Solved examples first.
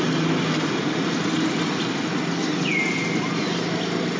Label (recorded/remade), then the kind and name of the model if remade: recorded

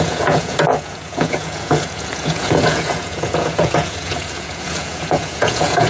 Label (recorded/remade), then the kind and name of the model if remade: remade, vocoder, Vocos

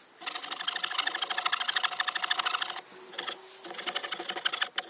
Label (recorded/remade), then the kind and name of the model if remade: recorded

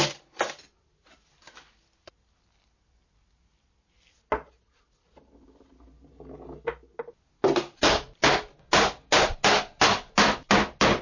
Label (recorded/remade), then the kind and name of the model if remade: recorded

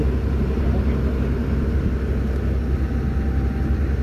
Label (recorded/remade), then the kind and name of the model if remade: recorded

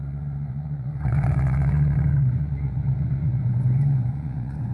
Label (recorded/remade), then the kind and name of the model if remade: remade, vocoder, Vocos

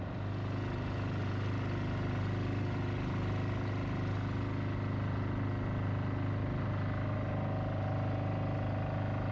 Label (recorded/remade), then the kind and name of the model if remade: recorded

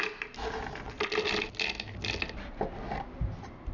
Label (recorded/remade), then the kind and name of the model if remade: recorded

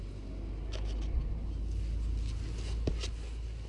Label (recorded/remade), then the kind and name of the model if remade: recorded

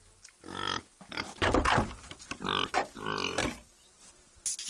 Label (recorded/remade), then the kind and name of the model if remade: recorded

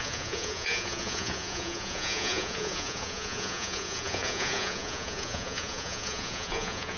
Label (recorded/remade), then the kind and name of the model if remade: remade, vocoder, Vocos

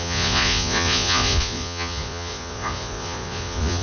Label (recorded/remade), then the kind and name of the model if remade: remade, vocoder, Vocos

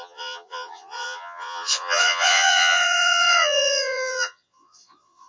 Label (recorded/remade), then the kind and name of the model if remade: remade, vocoder, Vocos